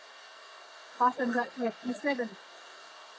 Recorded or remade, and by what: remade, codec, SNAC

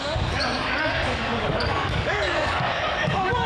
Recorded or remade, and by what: remade, codec, DAC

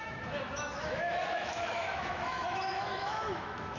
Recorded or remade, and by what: remade, autoencoder, DAC-VAE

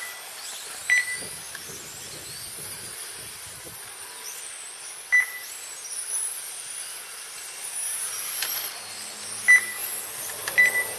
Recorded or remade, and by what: recorded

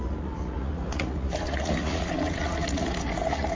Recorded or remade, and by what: remade, vocoder, Vocos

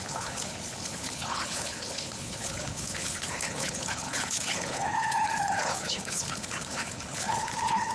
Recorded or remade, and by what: remade, codec, HILCodec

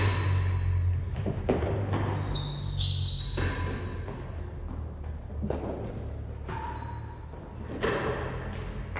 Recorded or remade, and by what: recorded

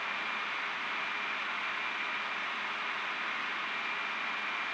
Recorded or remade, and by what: recorded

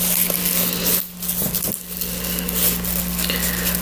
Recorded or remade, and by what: recorded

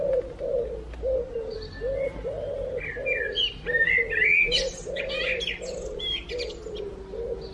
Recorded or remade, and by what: recorded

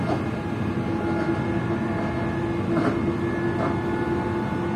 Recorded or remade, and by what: recorded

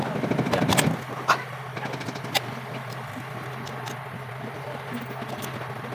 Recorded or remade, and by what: recorded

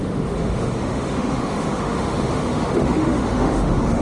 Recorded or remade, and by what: remade, autoencoder, DAC-VAE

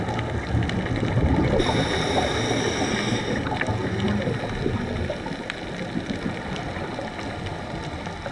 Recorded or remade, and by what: recorded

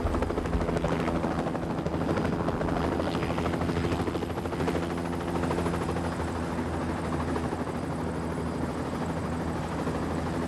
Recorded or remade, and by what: recorded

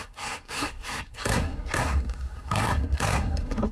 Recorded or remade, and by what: remade, codec, SNAC